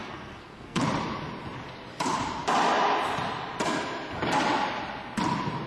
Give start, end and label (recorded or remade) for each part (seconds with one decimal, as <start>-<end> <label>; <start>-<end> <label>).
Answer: 0.0-0.8 remade; 0.8-5.7 recorded